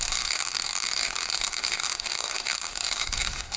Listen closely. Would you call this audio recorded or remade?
remade